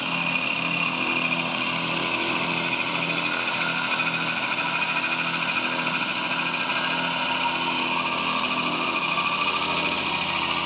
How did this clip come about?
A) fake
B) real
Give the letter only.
B